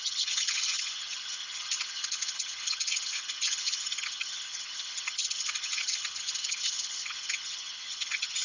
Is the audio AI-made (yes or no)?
yes